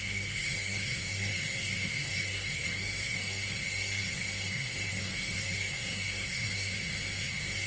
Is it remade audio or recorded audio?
remade